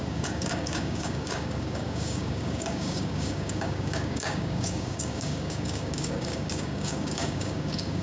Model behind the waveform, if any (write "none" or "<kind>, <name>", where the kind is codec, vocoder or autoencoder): codec, DAC